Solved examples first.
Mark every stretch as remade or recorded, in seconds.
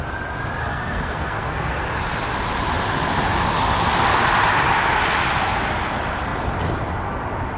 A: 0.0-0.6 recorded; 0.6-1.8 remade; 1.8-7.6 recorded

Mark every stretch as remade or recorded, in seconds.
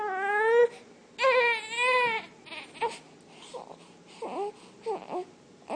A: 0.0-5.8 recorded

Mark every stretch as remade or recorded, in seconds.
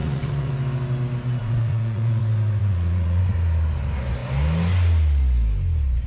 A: 0.0-0.5 remade; 0.5-1.4 recorded; 1.4-2.2 remade; 2.2-2.6 recorded; 2.6-3.2 remade; 3.2-6.1 recorded